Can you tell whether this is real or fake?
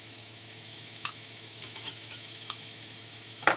fake